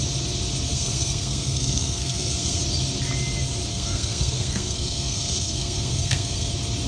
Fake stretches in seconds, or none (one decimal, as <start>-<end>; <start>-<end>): 0.7-2.6; 3.7-6.5